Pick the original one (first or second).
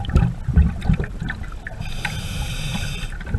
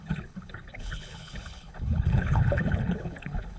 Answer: first